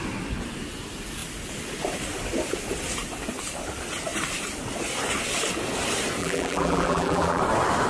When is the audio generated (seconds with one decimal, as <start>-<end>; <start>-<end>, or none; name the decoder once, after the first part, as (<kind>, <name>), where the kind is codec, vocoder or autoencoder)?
6.2-7.4 (vocoder, BigVGAN v2)